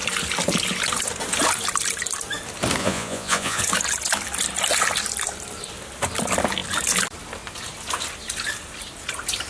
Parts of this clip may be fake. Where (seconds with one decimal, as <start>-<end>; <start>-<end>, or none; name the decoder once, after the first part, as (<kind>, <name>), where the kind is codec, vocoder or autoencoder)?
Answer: 2.8-3.6 (vocoder, Vocos)